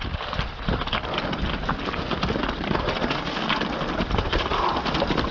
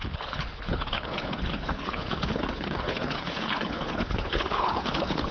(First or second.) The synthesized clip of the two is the second